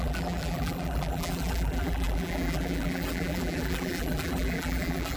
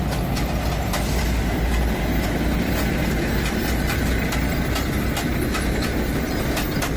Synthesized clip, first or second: first